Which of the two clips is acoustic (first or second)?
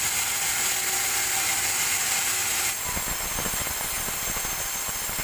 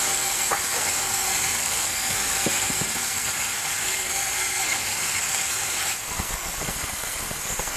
first